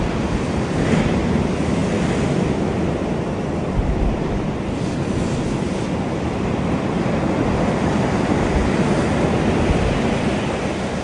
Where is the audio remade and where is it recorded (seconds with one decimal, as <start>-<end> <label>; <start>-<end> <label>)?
0.0-11.0 recorded